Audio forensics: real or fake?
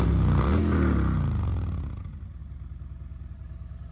real